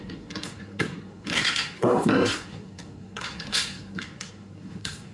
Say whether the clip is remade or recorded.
remade